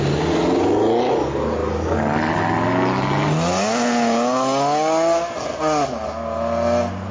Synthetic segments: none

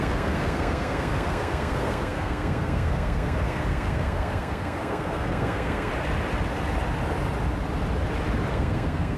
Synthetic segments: 0.0-5.9 (codec, SNAC); 8.5-9.2

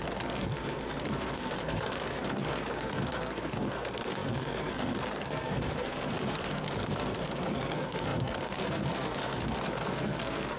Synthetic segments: 0.0-10.6 (codec, SNAC)

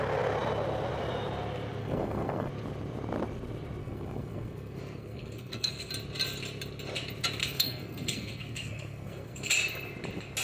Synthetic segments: 1.8-2.5 (codec, SNAC); 3.8-5.9; 7.4-9.5

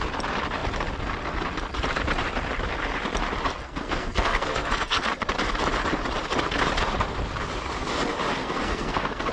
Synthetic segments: 3.6-5.1 (codec, SNAC); 8.4-9.3

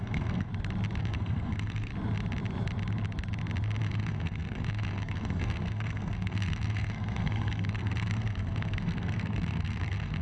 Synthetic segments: 0.0-0.5 (codec, SNAC); 1.0-1.9; 3.8-10.2

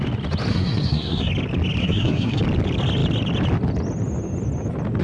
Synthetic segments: 0.5-1.3 (codec, SNAC); 1.8-2.4